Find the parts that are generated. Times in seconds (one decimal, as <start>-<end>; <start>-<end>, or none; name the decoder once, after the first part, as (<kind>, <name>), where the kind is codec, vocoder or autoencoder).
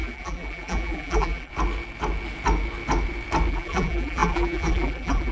0.0-1.5 (vocoder, BigVGAN v2); 3.5-5.3